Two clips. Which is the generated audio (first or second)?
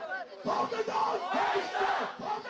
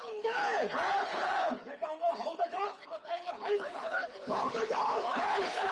second